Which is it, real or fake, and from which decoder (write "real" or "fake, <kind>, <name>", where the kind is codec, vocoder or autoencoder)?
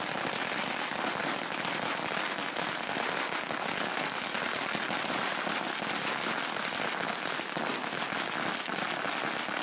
real